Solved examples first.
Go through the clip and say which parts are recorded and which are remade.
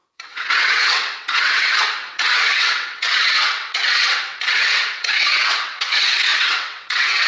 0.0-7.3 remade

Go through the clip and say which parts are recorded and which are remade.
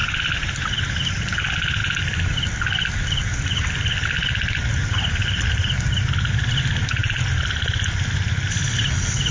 0.0-9.3 recorded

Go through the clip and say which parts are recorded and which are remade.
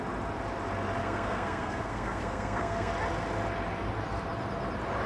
0.0-1.0 recorded; 1.0-2.9 remade; 2.9-5.1 recorded